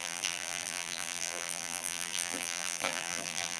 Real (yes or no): no